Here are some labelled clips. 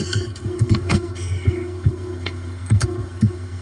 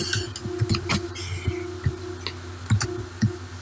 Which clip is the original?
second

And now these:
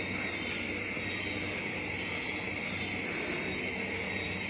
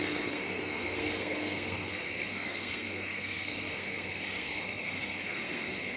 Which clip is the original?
first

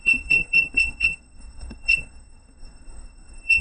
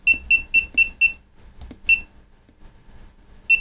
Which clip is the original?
second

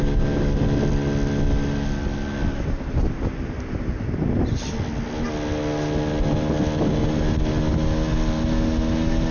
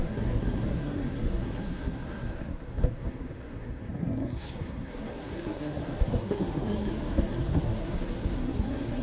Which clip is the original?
first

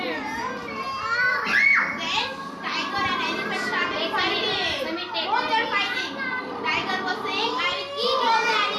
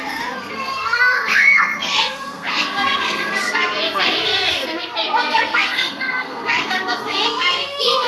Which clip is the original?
first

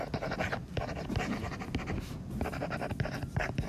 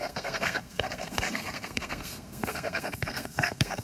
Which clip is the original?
first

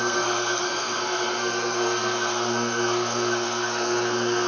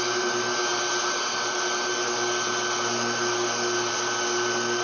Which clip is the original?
second